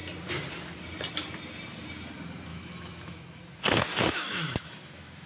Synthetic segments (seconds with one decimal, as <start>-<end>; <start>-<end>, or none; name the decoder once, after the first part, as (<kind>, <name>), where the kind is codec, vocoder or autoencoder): 2.5-3.4 (autoencoder, DAC-VAE); 3.9-5.3